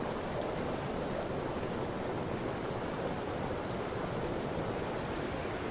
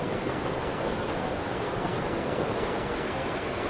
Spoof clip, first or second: second